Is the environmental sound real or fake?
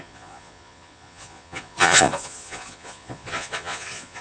fake